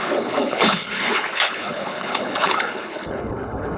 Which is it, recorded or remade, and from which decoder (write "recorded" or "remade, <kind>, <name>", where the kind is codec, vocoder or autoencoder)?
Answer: remade, codec, HILCodec